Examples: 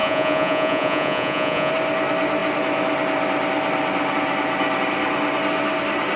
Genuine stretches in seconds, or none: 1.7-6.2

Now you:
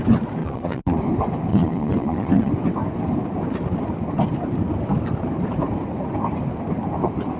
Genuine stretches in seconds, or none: 0.0-0.4; 1.0-1.5; 2.5-7.4

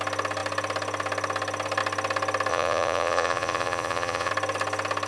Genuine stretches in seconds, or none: 0.0-2.5; 4.3-5.1